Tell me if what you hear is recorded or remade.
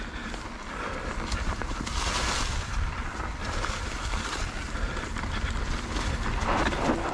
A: recorded